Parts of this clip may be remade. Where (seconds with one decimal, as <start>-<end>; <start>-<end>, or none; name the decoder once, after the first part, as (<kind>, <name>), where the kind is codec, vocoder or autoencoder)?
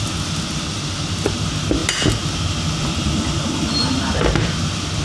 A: none